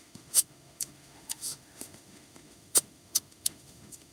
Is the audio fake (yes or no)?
yes